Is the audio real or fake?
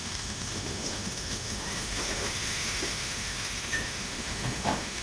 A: fake